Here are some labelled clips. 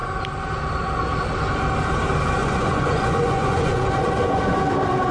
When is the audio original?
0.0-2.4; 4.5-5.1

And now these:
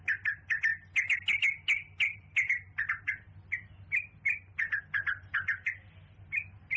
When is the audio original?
0.0-6.8

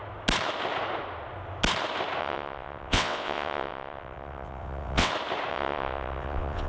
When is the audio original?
0.0-2.2; 5.1-5.5

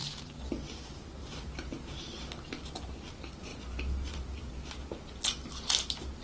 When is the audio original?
0.5-1.2; 2.3-3.5; 4.5-6.2

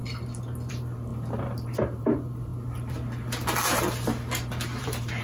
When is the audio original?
0.0-0.7; 2.5-4.8